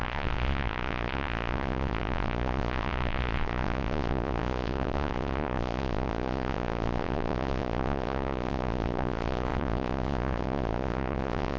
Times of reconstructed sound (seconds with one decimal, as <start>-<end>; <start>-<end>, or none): 0.0-11.6